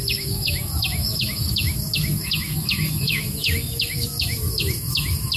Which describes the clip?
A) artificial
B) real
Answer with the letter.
A